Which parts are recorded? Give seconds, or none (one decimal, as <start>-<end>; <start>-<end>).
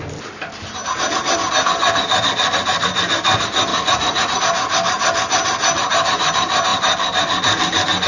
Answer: 0.0-3.7; 4.4-8.1